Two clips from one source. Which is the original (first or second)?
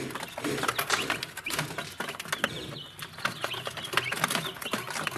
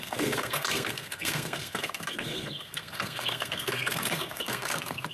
first